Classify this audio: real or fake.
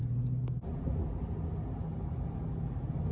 real